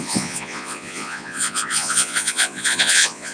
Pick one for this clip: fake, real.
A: fake